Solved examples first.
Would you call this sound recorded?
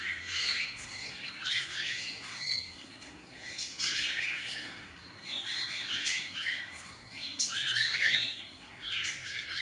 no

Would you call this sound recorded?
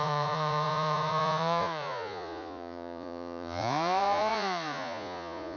no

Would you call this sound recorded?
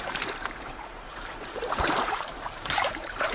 no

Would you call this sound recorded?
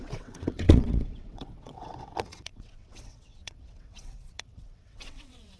no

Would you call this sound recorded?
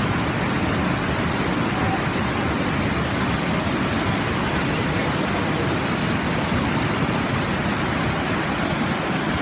yes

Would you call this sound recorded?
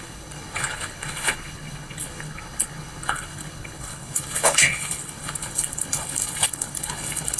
no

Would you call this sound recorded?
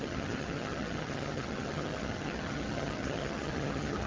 no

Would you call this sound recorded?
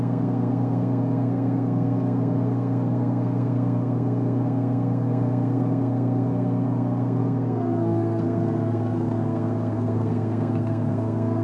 no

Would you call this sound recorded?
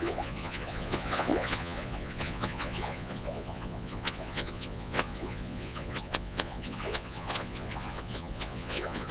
no